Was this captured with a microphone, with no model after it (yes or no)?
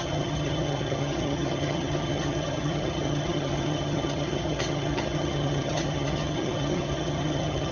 no